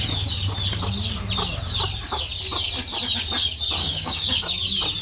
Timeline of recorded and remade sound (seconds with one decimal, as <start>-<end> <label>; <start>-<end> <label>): 0.0-3.8 recorded; 3.8-4.5 remade; 4.5-5.0 recorded